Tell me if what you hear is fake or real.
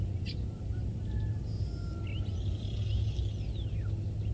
real